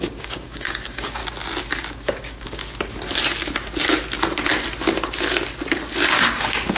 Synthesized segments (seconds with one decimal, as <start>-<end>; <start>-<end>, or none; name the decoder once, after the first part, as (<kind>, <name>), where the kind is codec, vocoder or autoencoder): 0.0-1.2 (codec, DAC); 1.9-2.6; 6.2-6.8